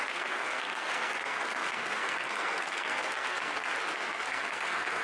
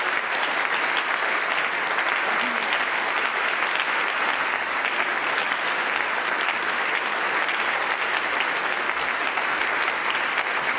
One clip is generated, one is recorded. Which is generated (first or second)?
first